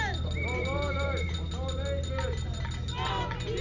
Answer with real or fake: real